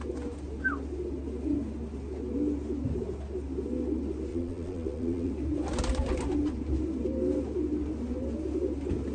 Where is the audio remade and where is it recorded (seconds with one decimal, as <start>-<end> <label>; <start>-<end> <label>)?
0.0-4.3 recorded; 4.3-5.3 remade; 5.3-9.1 recorded